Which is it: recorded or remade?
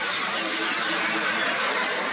recorded